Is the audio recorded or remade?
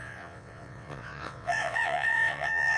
remade